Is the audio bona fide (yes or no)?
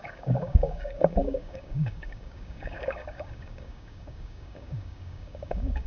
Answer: no